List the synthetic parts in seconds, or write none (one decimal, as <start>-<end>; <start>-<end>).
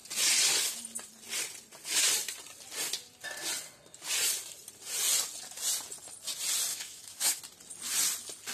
6.7-7.4